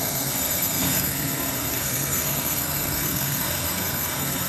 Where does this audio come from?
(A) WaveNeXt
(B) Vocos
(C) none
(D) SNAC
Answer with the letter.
D